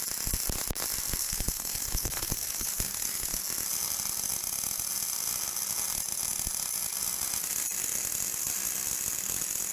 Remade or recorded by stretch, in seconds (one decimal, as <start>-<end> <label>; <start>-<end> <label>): 0.0-1.2 recorded; 1.2-3.4 remade; 3.4-9.7 recorded